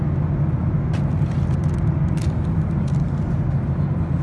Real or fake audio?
real